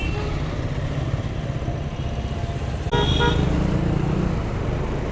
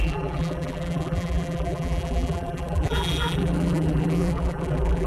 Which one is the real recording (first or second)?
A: first